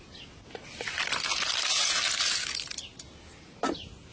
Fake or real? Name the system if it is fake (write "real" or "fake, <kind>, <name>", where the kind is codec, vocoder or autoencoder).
real